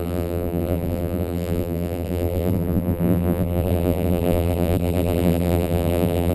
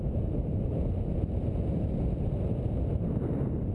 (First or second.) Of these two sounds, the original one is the second